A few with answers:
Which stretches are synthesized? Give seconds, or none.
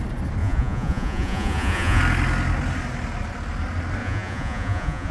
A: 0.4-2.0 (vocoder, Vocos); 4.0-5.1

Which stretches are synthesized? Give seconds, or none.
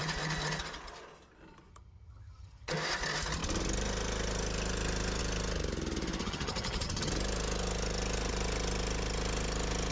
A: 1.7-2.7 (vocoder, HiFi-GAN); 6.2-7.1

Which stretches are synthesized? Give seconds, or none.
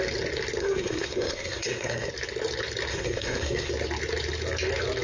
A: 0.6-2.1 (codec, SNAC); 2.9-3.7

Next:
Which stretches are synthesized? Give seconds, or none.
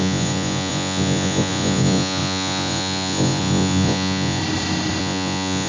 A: 0.0-4.4 (vocoder, Vocos); 5.0-5.7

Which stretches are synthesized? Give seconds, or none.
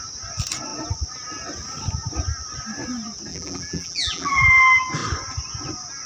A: 3.3-4.6 (vocoder, BigVGAN v2)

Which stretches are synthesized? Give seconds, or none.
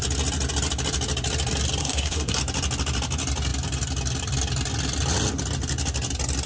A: 1.8-2.4 (codec, SNAC)